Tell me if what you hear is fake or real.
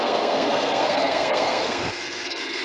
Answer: fake